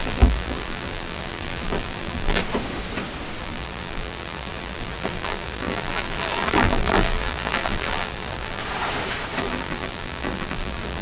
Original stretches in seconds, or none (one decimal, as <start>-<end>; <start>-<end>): 2.4-3.4; 8.6-9.4